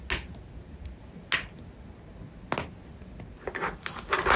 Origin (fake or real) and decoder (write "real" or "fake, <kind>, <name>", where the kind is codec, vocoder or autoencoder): real